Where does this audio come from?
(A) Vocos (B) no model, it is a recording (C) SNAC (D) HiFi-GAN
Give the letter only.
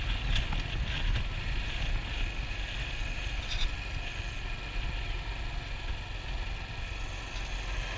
B